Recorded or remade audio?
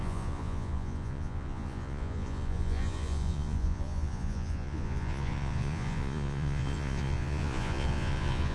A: remade